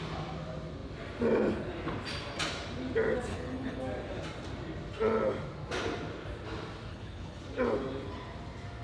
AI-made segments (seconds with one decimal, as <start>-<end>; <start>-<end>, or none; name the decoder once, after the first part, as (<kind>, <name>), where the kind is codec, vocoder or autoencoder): 3.3-3.8 (codec, HILCodec); 6.9-7.4